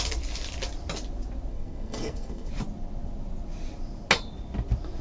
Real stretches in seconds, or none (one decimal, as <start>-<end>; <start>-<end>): 0.0-1.5; 2.5-5.0